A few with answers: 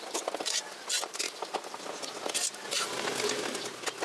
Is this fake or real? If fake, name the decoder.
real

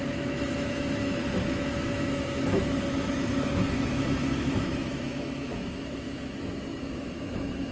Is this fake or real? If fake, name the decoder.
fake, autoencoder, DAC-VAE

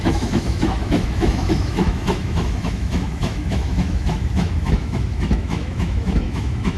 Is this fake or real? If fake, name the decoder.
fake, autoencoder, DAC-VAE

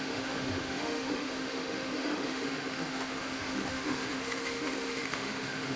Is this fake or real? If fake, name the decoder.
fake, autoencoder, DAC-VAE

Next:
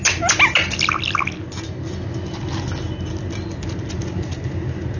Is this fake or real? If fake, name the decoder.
real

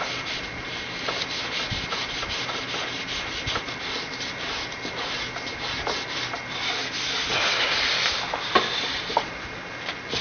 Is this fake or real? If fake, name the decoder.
real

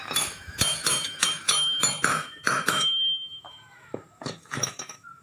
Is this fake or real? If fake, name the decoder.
fake, autoencoder, DAC-VAE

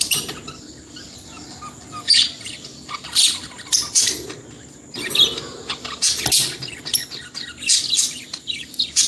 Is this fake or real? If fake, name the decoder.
real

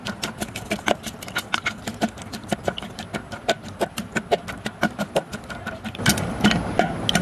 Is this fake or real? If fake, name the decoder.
real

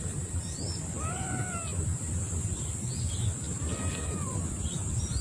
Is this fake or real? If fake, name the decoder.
real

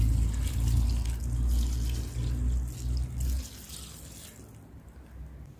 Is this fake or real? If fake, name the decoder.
real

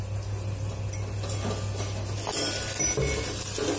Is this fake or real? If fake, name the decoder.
real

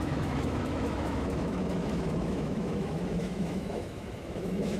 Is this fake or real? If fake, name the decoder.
fake, autoencoder, DAC-VAE